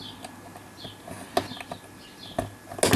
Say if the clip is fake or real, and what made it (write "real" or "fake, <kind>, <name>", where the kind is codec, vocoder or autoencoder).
real